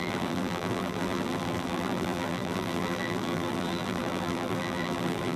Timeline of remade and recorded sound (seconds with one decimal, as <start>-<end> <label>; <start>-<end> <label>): 0.0-5.4 remade